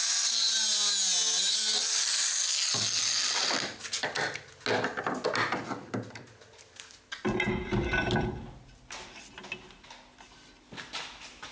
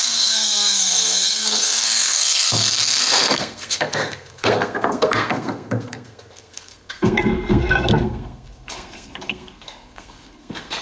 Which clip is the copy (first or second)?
second